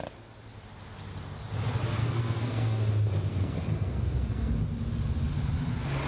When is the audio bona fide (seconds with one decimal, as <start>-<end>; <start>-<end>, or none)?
0.0-2.0; 2.9-3.3; 4.5-6.1